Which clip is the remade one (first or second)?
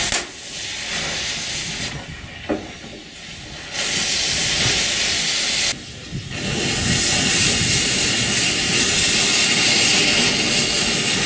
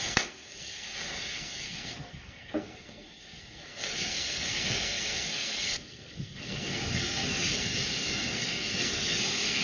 second